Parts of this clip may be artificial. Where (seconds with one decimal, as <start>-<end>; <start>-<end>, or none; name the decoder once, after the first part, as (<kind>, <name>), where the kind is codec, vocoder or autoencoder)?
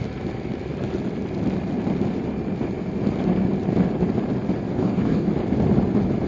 4.7-5.3 (codec, DAC)